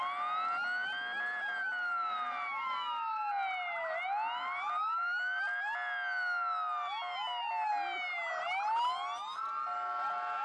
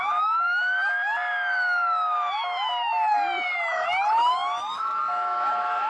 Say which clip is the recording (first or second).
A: first